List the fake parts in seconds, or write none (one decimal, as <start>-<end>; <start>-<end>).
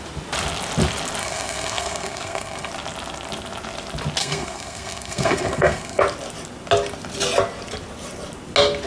1.2-2.7; 4.2-6.0